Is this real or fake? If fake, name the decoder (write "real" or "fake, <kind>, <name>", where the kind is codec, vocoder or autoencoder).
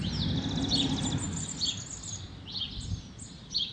real